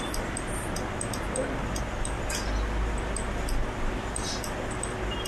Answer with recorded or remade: recorded